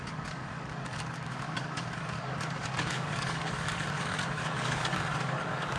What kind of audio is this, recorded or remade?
remade